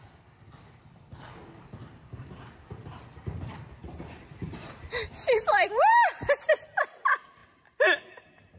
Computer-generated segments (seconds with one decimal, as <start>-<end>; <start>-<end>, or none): 1.8-2.8; 3.8-6.5